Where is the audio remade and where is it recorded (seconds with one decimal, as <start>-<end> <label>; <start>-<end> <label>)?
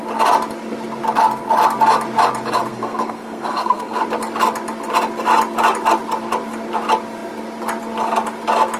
0.0-2.7 recorded; 2.7-4.0 remade; 4.0-8.8 recorded